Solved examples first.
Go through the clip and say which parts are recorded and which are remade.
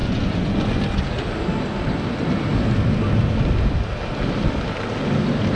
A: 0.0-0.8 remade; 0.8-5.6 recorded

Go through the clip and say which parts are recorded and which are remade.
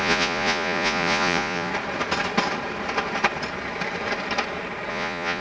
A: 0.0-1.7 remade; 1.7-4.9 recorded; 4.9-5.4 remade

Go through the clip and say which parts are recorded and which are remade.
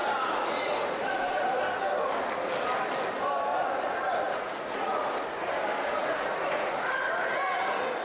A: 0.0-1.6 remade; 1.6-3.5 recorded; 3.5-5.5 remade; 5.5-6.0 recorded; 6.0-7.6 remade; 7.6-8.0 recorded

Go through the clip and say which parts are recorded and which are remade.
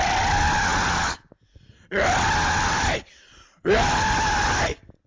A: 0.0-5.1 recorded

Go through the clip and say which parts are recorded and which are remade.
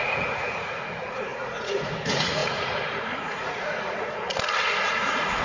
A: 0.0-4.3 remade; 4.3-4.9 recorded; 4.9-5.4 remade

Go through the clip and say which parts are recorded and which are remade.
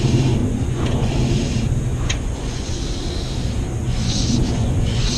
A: 0.0-0.4 recorded; 0.4-1.1 remade; 1.1-1.9 recorded; 1.9-2.8 remade; 2.8-3.8 recorded; 3.8-5.2 remade